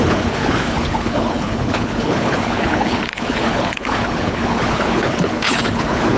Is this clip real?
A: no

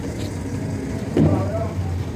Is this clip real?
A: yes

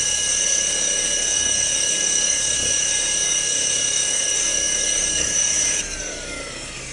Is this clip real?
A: no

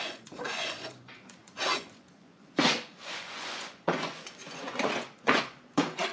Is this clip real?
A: no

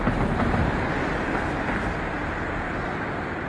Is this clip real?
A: yes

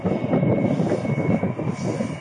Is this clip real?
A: yes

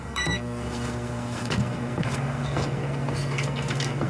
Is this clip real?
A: no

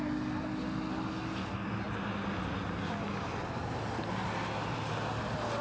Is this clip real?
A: yes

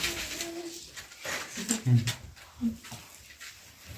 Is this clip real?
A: yes